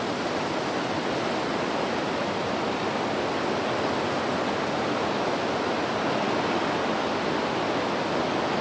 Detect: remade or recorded recorded